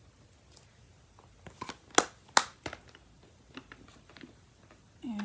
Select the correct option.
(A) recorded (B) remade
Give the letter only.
A